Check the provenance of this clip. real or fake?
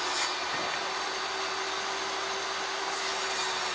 real